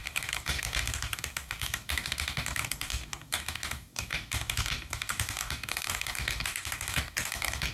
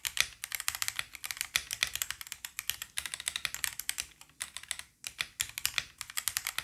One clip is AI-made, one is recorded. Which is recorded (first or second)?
second